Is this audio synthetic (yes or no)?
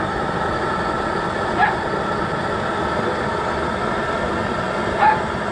no